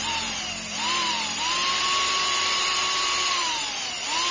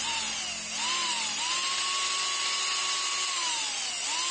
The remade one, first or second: first